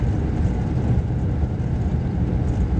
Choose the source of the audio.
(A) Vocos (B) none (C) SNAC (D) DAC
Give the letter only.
B